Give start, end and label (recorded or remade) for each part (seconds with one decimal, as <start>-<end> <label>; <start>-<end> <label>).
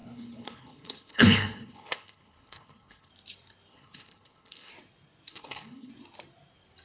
0.0-3.1 remade; 3.1-3.7 recorded; 3.7-4.7 remade; 4.7-5.3 recorded; 5.3-5.9 remade; 5.9-6.8 recorded